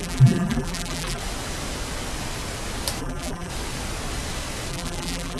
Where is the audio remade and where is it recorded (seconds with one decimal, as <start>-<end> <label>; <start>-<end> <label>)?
0.0-1.2 remade; 1.2-3.0 recorded; 3.0-3.5 remade; 3.5-4.7 recorded; 4.7-5.4 remade